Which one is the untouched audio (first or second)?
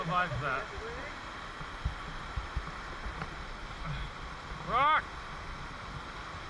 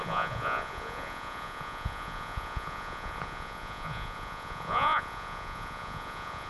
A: first